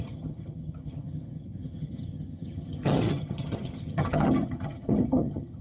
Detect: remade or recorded remade